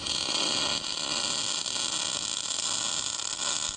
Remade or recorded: recorded